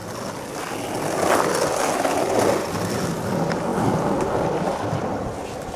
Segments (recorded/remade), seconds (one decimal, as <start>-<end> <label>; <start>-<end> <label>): 0.0-5.8 recorded